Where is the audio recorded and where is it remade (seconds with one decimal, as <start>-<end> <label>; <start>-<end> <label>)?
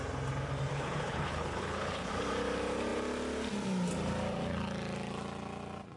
0.0-0.7 recorded; 0.7-2.1 remade; 2.1-6.0 recorded